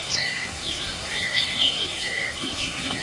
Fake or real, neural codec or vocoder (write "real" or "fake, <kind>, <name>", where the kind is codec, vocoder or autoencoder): fake, codec, SNAC